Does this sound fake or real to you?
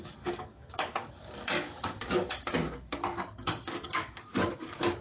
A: fake